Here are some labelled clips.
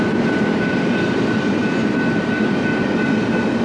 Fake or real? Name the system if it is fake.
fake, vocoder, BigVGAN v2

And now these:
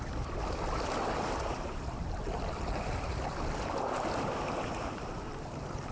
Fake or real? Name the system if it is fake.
fake, vocoder, BigVGAN v2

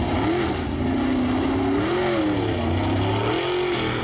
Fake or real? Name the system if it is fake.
real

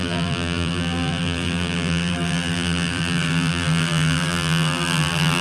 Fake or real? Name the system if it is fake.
fake, vocoder, BigVGAN v2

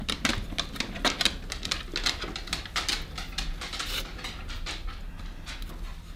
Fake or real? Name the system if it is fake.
real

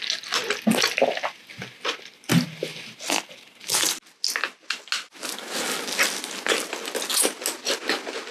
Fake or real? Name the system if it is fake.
real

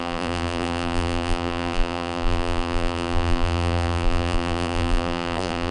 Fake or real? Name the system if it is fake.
fake, vocoder, BigVGAN v2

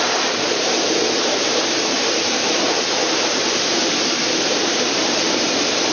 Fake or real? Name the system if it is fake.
fake, vocoder, BigVGAN v2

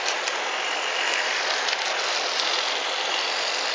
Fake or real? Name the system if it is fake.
fake, vocoder, BigVGAN v2